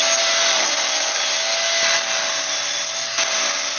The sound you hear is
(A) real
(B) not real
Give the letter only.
A